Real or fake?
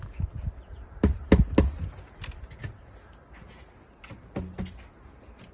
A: real